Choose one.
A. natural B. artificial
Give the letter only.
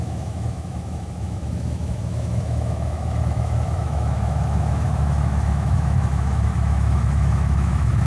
B